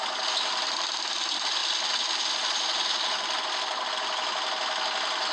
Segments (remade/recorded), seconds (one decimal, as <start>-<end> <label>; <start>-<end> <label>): 0.0-5.3 recorded